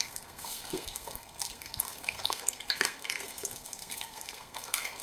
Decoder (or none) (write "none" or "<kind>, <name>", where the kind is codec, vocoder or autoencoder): codec, SNAC